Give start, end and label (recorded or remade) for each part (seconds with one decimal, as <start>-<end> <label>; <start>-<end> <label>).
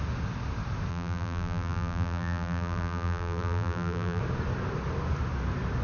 0.0-0.9 recorded; 0.9-4.2 remade; 4.2-5.8 recorded